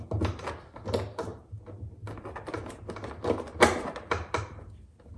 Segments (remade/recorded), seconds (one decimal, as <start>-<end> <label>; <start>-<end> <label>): 0.0-5.2 recorded